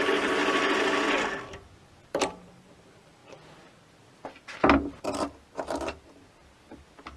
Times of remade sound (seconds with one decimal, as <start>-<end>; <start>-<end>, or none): 0.0-0.4; 2.1-3.2